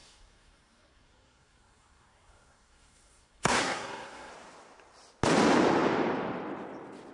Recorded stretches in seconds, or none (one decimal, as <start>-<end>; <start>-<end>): 4.3-7.1